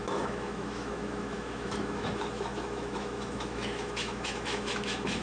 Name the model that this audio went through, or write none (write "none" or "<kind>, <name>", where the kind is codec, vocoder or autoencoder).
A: autoencoder, DAC-VAE